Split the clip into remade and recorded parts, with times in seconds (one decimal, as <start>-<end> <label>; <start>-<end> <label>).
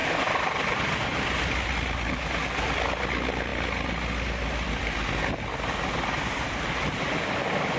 0.0-7.8 recorded